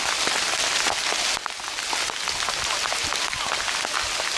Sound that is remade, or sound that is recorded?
recorded